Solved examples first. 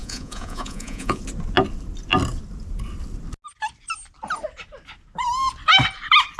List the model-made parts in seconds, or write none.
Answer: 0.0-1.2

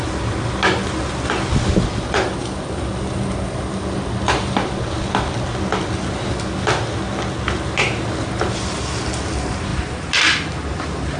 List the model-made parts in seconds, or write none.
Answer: none

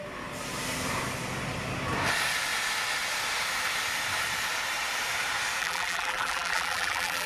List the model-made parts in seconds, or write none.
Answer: 5.6-7.3

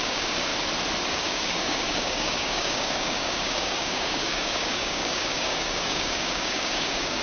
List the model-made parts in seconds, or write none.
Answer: 0.0-0.5; 1.1-7.2

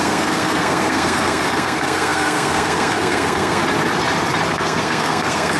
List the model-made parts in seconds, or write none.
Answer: 0.0-3.6; 4.5-5.6

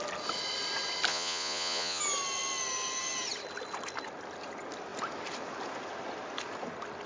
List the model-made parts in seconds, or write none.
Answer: 1.1-2.0

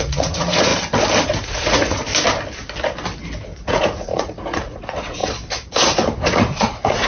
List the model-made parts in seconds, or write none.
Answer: 0.0-0.7; 1.2-2.1; 3.7-5.2; 6.2-7.1